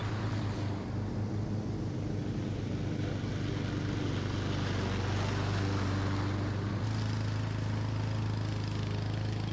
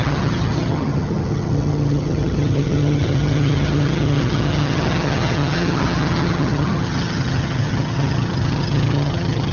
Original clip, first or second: first